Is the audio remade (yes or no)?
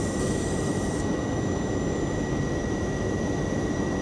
no